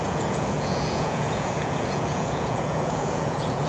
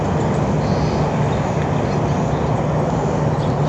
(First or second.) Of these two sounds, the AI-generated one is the first